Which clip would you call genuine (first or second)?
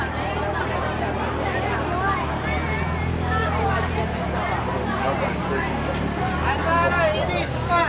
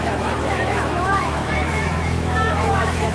first